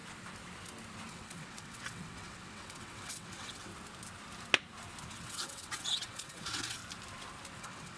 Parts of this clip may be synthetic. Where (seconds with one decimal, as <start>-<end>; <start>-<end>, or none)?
1.1-3.7; 5.1-6.8; 7.6-8.0